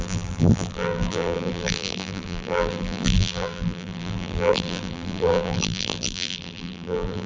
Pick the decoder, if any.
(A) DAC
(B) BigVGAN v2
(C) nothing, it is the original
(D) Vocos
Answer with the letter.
B